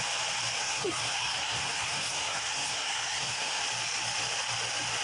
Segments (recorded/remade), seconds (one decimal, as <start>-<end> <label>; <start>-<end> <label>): 0.0-0.6 recorded; 0.6-3.6 remade; 3.6-5.0 recorded